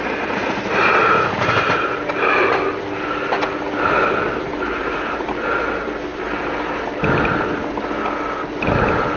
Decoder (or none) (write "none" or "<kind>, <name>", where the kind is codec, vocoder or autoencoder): none